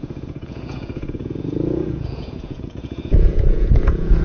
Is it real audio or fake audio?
fake